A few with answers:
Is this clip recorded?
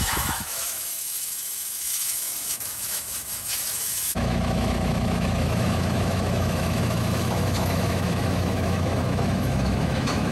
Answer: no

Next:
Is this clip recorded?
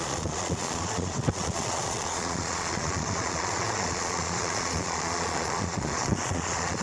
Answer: no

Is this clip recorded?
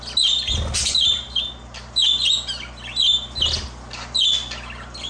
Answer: yes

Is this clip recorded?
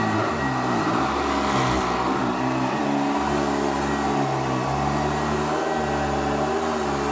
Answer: yes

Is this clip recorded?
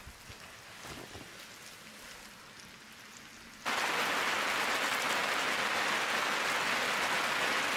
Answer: yes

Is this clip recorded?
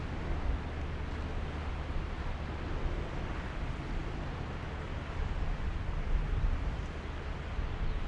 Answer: yes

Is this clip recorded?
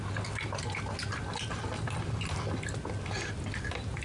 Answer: yes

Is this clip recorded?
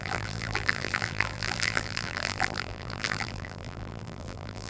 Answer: no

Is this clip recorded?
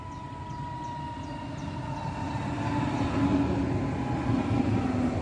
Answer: yes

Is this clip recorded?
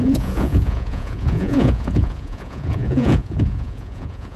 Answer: no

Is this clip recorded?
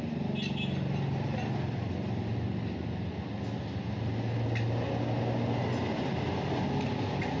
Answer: yes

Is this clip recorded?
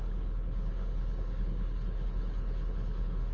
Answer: no